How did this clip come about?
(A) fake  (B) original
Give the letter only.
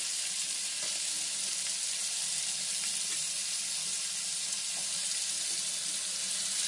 B